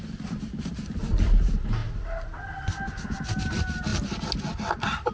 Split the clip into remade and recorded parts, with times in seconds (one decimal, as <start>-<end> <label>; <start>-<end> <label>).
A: 0.0-5.1 recorded